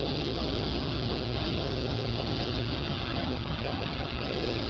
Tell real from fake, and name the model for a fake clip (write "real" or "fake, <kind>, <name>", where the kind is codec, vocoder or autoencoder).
fake, vocoder, HiFi-GAN